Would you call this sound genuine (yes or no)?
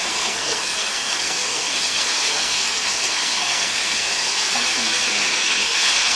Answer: no